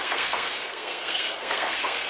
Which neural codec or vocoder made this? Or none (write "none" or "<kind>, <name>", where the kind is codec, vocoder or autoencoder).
codec, SNAC